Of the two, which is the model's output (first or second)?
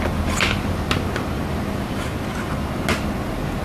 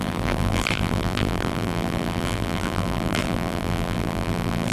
second